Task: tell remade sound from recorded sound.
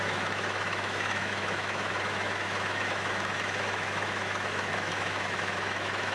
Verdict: remade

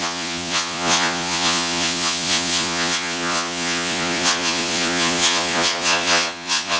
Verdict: remade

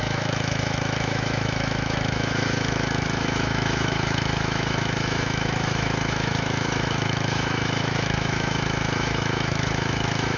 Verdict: remade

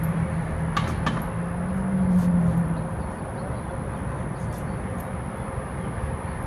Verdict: recorded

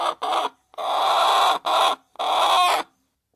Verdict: recorded